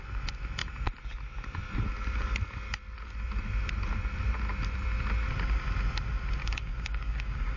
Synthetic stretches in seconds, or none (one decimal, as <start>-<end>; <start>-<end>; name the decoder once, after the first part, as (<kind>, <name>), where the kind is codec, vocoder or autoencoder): 6.4-7.6 (codec, DAC)